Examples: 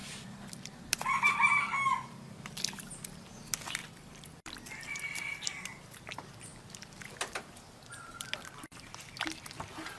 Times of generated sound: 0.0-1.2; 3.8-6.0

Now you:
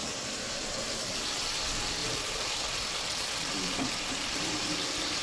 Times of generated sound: 0.0-1.1; 2.0-5.2

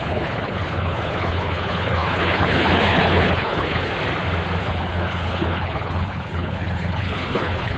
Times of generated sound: 0.0-3.9; 4.6-7.8

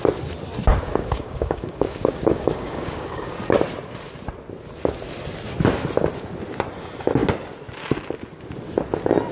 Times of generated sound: 0.7-3.3

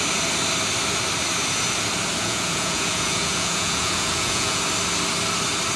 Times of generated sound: 2.2-4.6